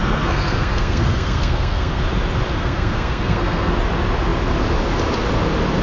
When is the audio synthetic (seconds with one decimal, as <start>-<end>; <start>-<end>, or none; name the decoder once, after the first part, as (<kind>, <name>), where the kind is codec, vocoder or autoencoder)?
0.0-2.0 (codec, SNAC); 2.6-3.7